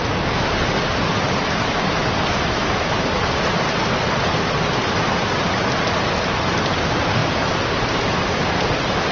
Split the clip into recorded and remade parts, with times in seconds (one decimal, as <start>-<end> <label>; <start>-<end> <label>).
0.0-9.1 recorded